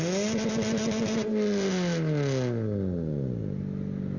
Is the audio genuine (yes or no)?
yes